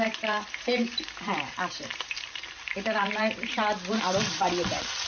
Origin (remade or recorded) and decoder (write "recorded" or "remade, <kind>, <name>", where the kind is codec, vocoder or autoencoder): remade, vocoder, BigVGAN v2